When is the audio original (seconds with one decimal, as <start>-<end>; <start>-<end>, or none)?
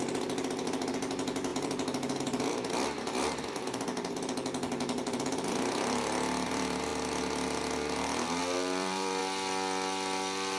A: 6.9-8.4; 9.2-10.6